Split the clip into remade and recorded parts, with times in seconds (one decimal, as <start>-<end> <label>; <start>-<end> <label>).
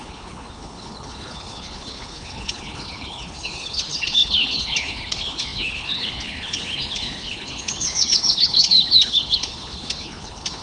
0.0-10.6 remade